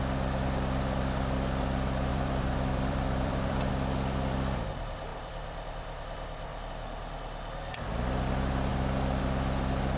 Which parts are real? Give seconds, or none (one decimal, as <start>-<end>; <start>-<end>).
0.0-2.1; 3.7-5.1; 6.7-10.0